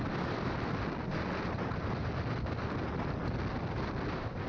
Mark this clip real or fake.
real